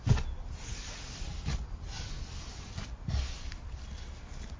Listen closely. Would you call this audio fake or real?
real